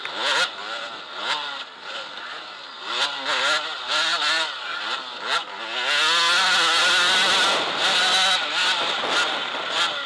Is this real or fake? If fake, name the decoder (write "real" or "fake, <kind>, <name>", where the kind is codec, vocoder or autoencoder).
real